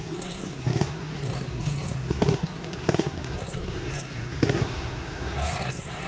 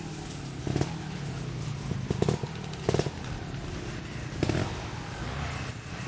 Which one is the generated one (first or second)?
first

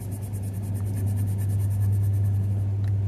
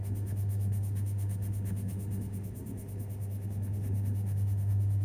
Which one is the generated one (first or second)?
second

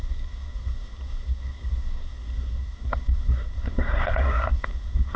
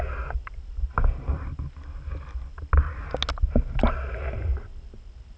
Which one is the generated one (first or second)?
first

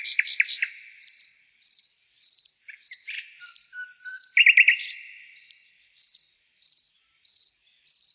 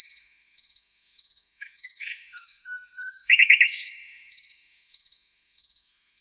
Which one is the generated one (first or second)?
second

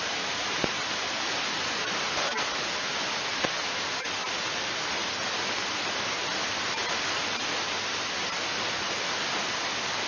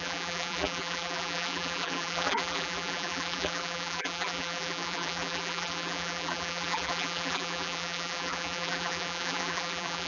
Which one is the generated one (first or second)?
second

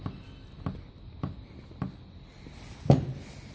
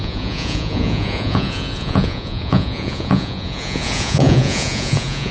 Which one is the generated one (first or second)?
second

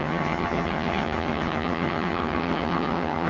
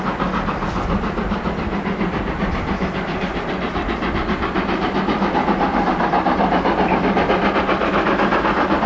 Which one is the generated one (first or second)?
first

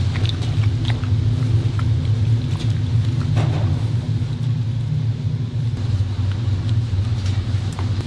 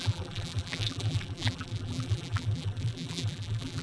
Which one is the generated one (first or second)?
second